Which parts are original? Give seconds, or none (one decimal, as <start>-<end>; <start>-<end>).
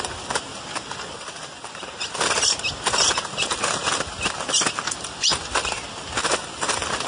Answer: 0.0-7.1